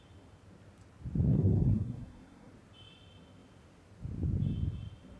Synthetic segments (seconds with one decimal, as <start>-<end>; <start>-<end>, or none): 1.3-2.5